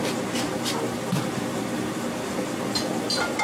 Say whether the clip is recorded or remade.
recorded